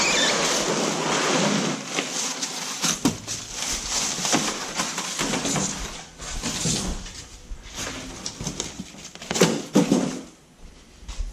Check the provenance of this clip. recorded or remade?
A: recorded